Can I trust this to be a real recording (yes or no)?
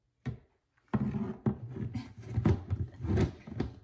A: yes